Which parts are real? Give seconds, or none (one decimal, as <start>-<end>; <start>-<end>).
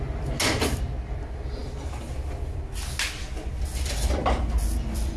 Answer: 0.0-5.2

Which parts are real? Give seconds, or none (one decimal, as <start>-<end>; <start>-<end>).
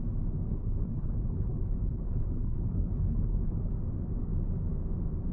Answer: 0.0-0.5; 3.7-5.3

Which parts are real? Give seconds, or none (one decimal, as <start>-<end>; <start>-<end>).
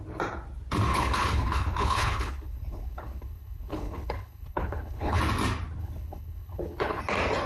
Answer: 0.0-0.9; 5.2-5.8; 7.0-7.5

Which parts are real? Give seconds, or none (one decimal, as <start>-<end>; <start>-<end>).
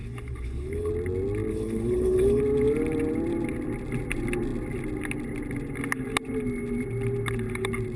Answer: 0.9-1.5; 2.4-8.0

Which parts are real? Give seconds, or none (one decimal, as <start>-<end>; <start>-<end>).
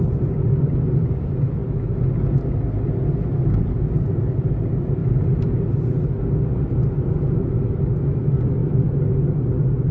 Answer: 0.0-9.9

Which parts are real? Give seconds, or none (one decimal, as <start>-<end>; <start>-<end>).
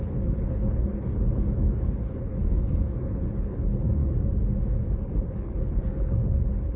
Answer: 4.0-5.0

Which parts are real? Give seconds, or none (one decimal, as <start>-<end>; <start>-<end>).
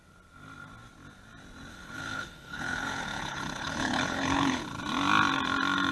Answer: 0.0-1.7; 4.8-5.9